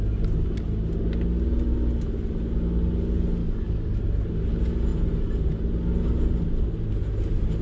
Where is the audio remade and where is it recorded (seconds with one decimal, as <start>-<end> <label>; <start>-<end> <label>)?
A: 0.0-3.4 recorded; 3.4-4.0 remade; 4.0-7.6 recorded